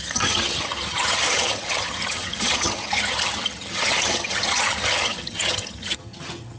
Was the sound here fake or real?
fake